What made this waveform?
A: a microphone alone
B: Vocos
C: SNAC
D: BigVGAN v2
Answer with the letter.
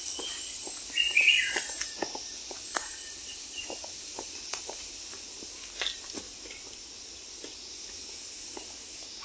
A